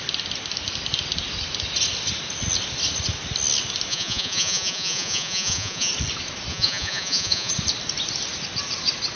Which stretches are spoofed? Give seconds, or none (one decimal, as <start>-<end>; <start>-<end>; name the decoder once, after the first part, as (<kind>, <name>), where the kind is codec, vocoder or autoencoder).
3.9-5.9 (vocoder, Vocos); 6.5-7.5